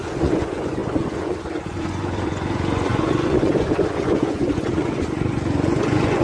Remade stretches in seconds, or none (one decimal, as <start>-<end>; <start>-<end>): 0.0-6.2